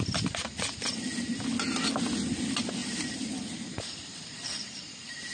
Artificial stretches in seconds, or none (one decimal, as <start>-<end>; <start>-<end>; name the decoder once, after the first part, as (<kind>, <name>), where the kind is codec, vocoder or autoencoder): 2.8-3.4 (vocoder, BigVGAN v2); 4.1-5.3